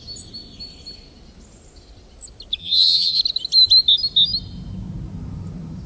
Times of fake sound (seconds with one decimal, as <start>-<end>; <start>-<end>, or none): 2.6-3.2